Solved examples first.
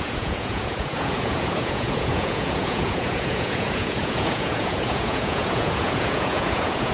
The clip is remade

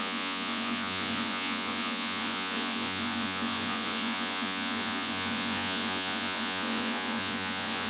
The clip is remade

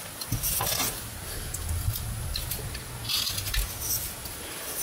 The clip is recorded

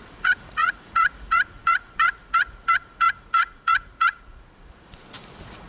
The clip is remade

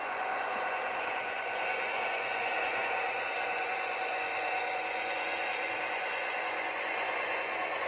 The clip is remade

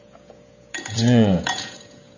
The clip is remade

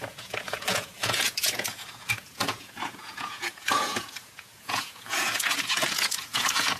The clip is remade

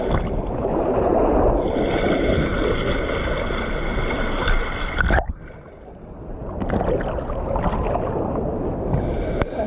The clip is recorded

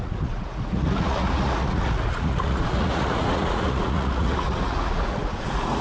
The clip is remade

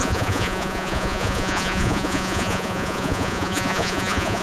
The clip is remade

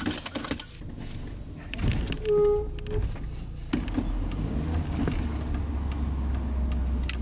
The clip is recorded